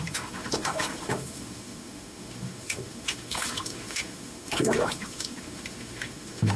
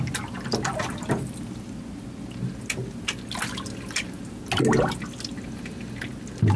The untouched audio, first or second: second